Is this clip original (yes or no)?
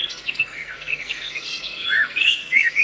no